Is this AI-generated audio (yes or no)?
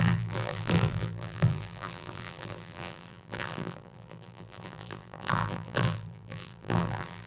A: yes